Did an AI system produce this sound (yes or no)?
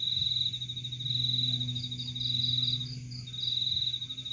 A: no